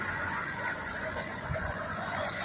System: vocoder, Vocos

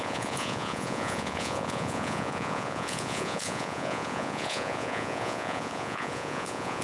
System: vocoder, Vocos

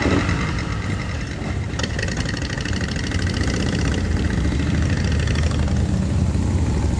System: none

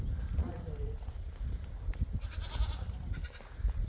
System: none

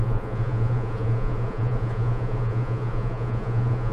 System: vocoder, Vocos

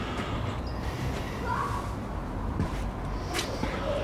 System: none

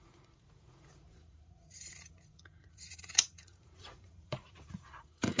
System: vocoder, Vocos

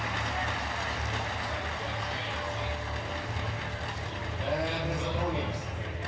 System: none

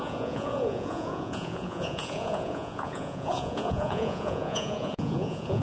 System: vocoder, Vocos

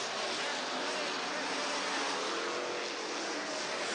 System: none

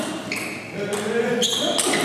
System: none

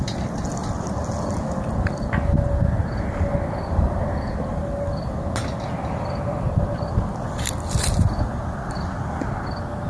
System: none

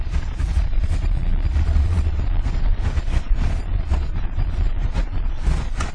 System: vocoder, Vocos